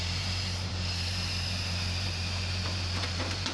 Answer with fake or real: fake